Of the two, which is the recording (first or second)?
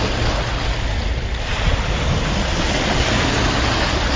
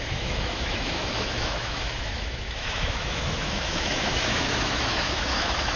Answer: first